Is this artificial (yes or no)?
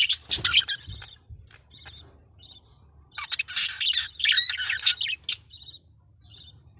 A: no